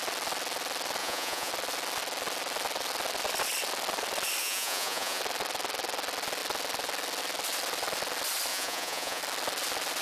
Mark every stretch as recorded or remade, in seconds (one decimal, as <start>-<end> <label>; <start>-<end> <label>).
0.0-1.0 recorded; 1.0-1.5 remade; 1.5-4.4 recorded; 4.4-5.2 remade; 5.2-8.5 recorded; 8.5-9.2 remade; 9.2-10.0 recorded